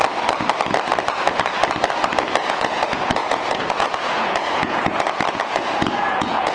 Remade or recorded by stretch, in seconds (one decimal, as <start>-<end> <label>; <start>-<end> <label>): 0.0-2.5 recorded; 2.5-6.5 remade